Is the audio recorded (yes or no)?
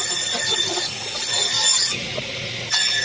no